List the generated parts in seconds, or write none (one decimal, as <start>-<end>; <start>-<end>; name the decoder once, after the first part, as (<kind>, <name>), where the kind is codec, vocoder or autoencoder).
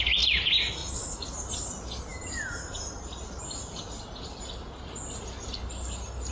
0.8-1.5 (vocoder, Vocos)